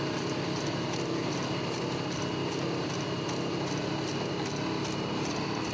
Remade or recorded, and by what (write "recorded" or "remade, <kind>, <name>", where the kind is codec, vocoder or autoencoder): recorded